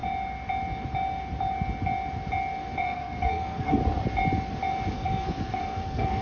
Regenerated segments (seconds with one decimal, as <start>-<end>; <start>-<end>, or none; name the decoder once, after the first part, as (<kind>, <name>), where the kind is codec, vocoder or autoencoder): 2.8-3.8 (codec, SNAC); 4.9-6.2